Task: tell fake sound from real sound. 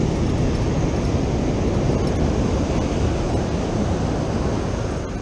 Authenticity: real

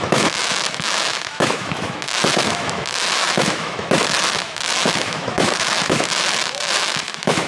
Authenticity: fake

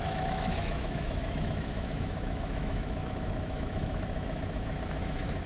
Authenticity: fake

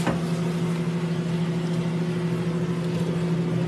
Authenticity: real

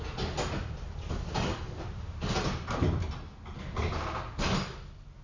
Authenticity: real